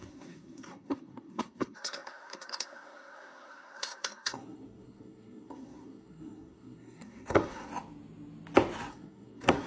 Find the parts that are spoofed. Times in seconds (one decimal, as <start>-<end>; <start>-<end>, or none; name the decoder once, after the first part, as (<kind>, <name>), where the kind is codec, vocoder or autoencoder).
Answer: 0.0-7.7 (codec, SNAC); 8.9-9.7